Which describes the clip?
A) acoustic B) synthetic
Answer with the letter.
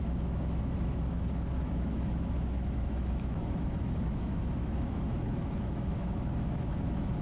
B